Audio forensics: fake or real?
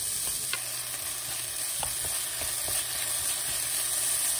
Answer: real